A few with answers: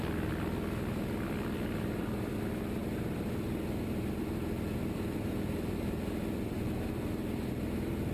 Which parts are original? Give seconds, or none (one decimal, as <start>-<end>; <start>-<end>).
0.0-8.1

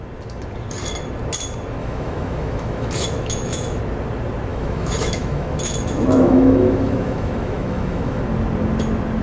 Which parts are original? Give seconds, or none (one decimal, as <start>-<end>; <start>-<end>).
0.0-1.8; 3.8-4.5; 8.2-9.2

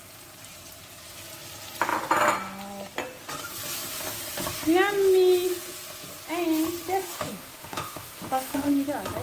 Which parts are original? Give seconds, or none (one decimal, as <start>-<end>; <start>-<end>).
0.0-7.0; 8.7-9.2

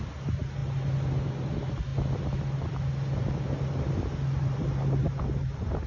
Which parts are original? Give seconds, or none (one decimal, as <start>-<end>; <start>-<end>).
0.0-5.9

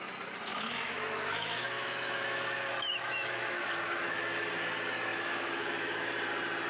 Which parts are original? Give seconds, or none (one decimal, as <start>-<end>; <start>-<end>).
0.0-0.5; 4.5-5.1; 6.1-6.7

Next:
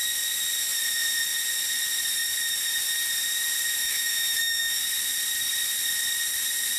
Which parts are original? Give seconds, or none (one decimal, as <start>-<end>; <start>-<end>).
0.0-3.8; 4.8-6.8

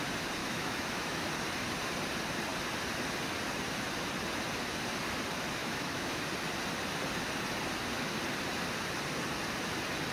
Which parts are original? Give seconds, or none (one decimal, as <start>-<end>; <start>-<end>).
0.0-0.4; 1.3-5.6; 6.2-10.1

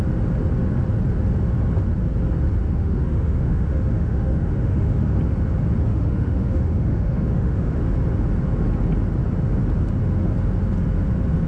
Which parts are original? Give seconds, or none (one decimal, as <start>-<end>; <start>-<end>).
0.0-2.6; 5.2-5.9; 7.8-11.5